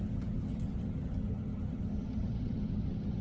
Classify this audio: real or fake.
fake